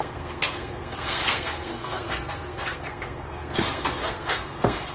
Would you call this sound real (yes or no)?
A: no